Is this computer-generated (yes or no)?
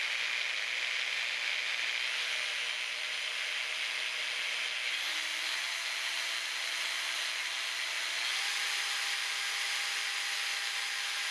no